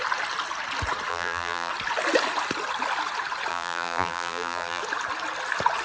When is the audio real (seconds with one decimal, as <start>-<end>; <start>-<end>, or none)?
0.0-1.1; 1.7-3.5; 4.8-5.8